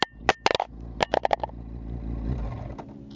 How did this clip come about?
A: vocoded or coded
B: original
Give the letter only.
B